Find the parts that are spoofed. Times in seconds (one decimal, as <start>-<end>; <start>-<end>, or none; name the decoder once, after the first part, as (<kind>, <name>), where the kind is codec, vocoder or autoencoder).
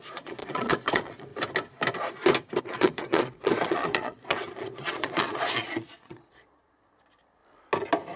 0.0-1.3 (vocoder, Vocos); 2.6-7.4